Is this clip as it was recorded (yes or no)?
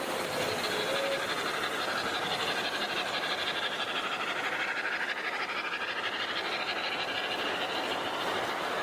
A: yes